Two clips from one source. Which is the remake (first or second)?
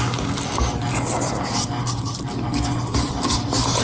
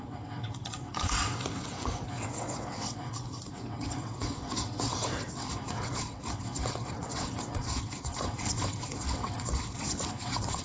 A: second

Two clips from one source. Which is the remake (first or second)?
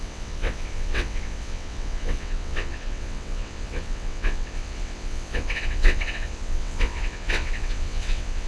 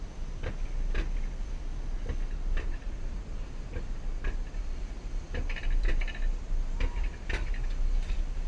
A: first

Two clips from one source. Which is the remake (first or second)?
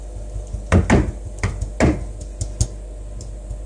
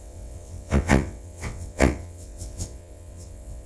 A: second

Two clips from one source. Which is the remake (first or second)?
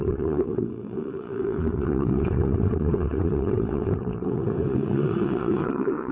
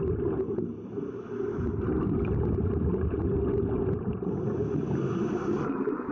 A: first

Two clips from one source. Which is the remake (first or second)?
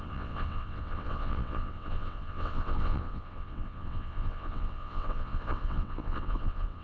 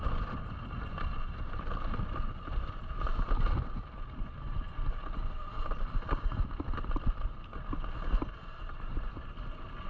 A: first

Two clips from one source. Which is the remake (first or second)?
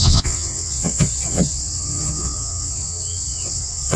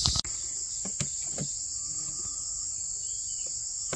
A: first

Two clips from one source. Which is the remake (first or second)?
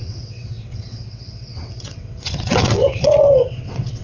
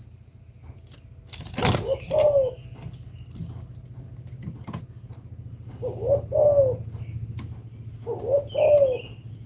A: first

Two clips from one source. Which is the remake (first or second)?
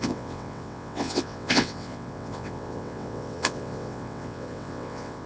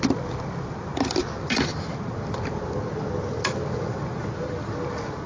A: first